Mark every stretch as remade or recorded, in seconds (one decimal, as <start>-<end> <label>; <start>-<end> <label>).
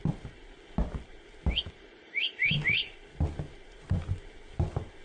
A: 0.0-5.0 recorded